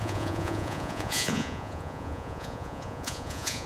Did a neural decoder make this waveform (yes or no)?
yes